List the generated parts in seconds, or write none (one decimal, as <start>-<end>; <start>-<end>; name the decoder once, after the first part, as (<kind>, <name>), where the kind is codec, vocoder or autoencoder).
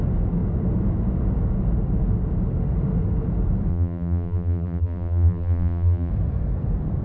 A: 3.7-6.1 (vocoder, BigVGAN v2)